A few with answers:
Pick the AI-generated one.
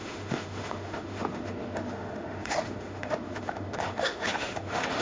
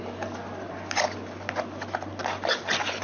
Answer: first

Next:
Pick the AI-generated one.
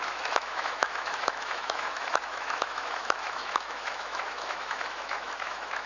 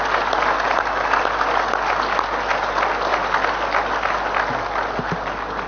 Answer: first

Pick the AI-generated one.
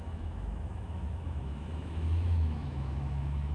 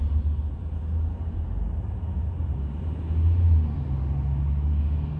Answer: first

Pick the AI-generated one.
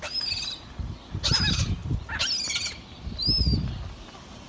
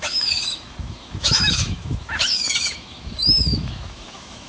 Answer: second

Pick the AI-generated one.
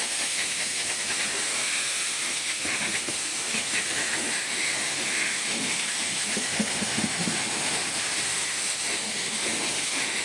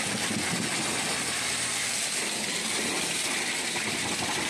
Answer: first